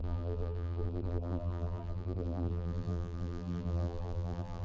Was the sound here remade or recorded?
remade